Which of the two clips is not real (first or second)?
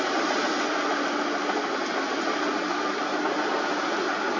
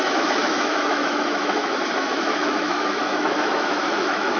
second